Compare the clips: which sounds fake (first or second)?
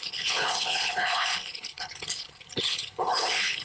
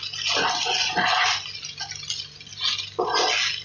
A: first